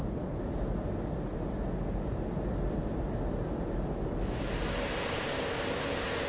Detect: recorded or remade recorded